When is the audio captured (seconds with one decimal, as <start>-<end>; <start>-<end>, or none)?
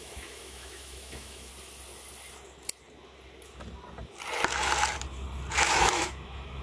1.5-5.5